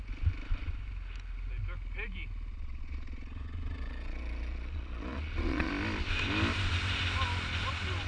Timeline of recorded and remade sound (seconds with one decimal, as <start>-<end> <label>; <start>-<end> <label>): 0.0-2.5 recorded; 2.5-5.7 remade; 5.7-8.1 recorded